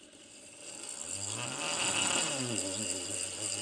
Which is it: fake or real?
real